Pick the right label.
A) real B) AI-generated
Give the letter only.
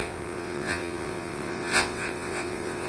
B